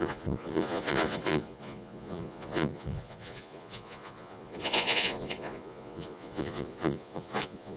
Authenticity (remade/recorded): remade